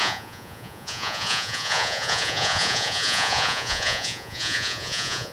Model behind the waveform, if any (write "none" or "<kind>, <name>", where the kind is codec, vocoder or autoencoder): vocoder, Vocos